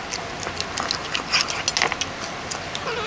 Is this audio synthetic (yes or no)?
no